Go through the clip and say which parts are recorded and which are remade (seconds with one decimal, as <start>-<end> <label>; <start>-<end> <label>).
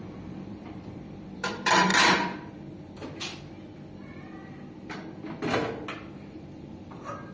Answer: 0.0-1.9 remade; 1.9-6.3 recorded; 6.3-7.3 remade